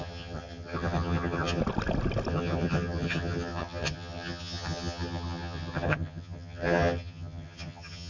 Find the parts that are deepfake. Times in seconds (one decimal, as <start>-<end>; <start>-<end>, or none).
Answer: 0.0-1.6; 2.3-8.1